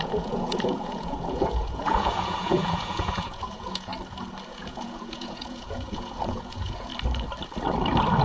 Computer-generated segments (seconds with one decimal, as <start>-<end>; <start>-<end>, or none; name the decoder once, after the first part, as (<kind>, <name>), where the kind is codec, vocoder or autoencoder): 0.0-3.9 (vocoder, Vocos); 4.5-6.9